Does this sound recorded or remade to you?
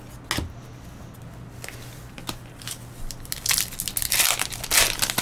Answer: recorded